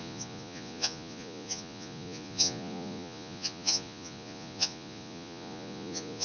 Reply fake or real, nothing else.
fake